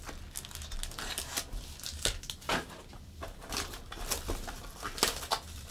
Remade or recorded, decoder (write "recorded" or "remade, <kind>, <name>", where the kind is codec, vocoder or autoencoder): recorded